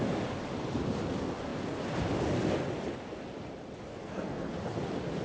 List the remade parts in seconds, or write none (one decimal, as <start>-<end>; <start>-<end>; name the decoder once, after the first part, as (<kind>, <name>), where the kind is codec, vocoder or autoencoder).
3.9-4.5 (codec, SNAC)